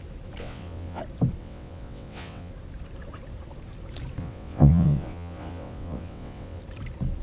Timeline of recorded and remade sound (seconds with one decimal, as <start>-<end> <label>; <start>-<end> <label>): 0.0-0.4 recorded; 0.4-1.0 remade; 1.0-1.4 recorded; 1.4-2.5 remade; 2.5-4.2 recorded; 4.2-6.6 remade; 6.6-7.2 recorded